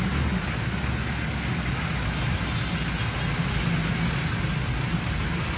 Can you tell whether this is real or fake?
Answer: real